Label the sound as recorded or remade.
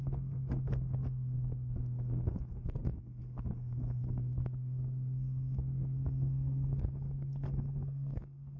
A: remade